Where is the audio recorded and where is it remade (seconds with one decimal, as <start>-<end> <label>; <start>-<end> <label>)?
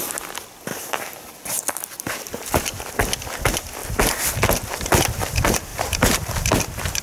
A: 0.0-0.7 recorded; 0.7-1.4 remade; 1.4-5.7 recorded; 5.7-6.5 remade; 6.5-7.0 recorded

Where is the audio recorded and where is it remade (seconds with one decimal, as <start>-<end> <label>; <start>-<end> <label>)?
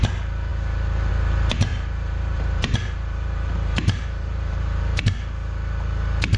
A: 0.0-1.7 recorded; 1.7-5.0 remade; 5.0-6.4 recorded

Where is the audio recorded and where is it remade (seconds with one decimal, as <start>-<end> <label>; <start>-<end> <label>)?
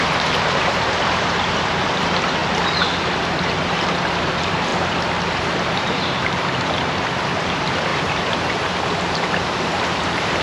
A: 0.0-2.4 remade; 2.4-3.2 recorded; 3.2-4.7 remade; 4.7-5.2 recorded; 5.2-10.4 remade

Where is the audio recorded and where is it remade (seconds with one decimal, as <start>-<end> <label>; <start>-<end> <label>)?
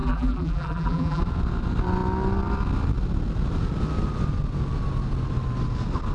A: 0.0-1.2 remade; 1.2-6.1 recorded